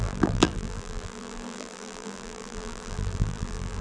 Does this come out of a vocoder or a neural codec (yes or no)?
yes